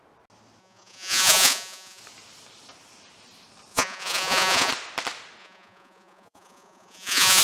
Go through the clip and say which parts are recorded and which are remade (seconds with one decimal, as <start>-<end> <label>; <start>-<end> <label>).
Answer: 0.0-0.6 recorded; 0.6-2.0 remade; 2.0-3.7 recorded; 3.7-4.7 remade; 4.7-5.4 recorded; 5.4-7.4 remade